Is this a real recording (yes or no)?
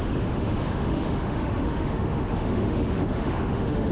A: no